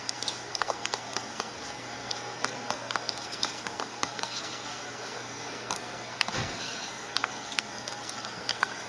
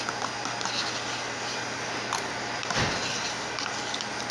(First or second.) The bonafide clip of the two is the second